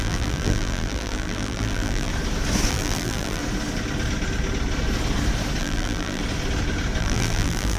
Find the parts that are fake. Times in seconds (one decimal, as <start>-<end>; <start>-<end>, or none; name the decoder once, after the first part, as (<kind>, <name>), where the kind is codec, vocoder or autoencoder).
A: 0.0-2.1 (vocoder, BigVGAN v2); 2.7-3.4; 5.6-6.2; 7.0-7.8